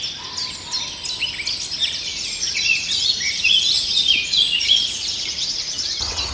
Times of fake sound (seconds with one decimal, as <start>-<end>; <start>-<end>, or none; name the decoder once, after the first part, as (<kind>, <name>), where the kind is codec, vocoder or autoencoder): 2.1-6.3 (vocoder, Vocos)